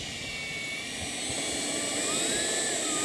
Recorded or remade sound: recorded